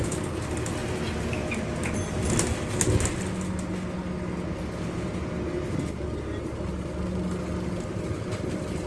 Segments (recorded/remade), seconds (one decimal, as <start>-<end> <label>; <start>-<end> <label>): 0.0-8.9 recorded